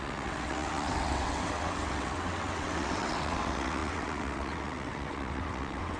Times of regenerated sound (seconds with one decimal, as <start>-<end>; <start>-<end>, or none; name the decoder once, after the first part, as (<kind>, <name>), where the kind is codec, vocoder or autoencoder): 0.0-6.0 (vocoder, WaveNeXt)